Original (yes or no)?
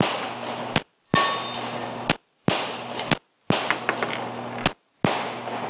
yes